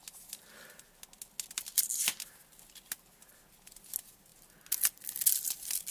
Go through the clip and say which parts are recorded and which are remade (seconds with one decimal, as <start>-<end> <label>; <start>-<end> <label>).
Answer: 0.0-5.9 recorded